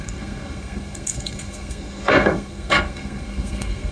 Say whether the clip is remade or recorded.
remade